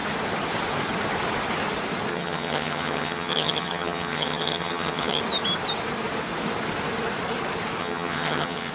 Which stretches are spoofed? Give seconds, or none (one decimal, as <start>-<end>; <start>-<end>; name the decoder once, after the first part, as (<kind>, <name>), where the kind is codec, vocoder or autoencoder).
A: 2.1-5.2 (vocoder, HiFi-GAN); 7.8-8.7